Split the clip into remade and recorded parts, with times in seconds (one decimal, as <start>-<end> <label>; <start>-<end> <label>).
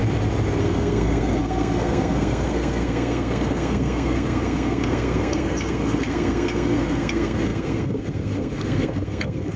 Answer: 0.0-0.6 recorded; 0.6-9.6 remade